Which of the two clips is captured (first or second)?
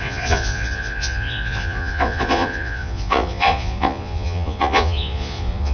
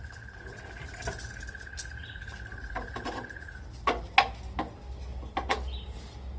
second